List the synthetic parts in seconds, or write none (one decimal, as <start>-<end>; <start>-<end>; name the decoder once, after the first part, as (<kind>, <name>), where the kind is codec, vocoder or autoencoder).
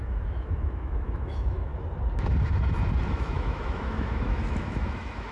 0.0-1.7 (autoencoder, DAC-VAE); 3.1-5.3